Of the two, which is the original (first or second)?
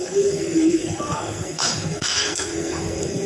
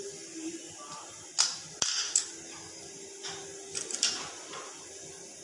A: second